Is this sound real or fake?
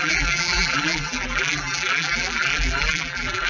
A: fake